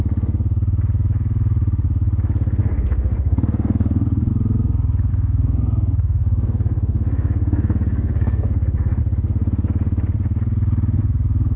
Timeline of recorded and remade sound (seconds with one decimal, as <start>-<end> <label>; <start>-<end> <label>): 0.0-2.6 recorded; 2.6-4.3 remade; 4.3-5.1 recorded; 5.1-9.0 remade; 9.0-11.6 recorded

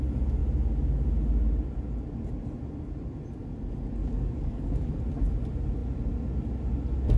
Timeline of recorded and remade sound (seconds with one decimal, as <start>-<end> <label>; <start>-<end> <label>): 0.0-4.0 recorded; 4.0-4.9 remade; 4.9-7.2 recorded